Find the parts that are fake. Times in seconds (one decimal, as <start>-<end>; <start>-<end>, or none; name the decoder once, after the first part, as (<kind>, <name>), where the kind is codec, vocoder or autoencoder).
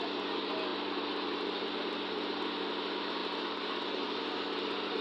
none